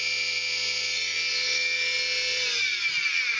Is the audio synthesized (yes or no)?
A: no